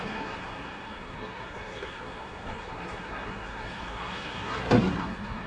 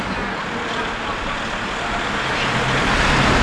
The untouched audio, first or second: second